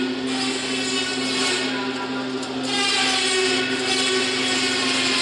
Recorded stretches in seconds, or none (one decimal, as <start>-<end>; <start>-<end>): 0.0-5.2